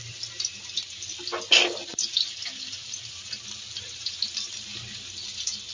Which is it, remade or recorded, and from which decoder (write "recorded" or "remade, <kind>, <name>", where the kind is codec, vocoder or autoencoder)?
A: recorded